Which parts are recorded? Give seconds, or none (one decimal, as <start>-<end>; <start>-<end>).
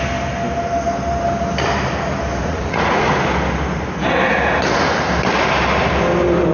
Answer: 0.0-2.4; 3.1-6.5